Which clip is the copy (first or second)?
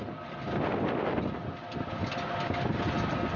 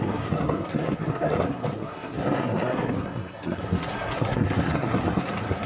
second